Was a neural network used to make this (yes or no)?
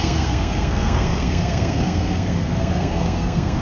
yes